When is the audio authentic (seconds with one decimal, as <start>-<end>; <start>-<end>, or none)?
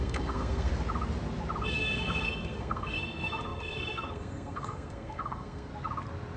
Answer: 0.7-1.7; 5.7-6.4